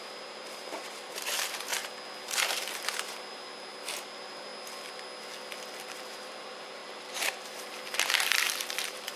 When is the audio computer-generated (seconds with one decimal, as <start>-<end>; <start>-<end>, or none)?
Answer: 0.0-1.7; 2.2-4.5; 6.0-9.2